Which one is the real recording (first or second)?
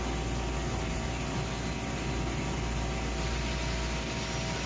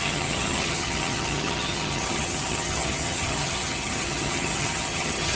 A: first